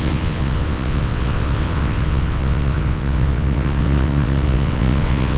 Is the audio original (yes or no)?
no